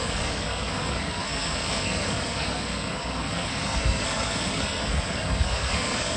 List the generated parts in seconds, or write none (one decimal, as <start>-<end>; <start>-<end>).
0.0-6.2